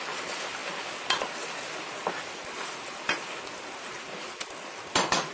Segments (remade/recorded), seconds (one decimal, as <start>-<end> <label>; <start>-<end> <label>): 0.0-5.3 recorded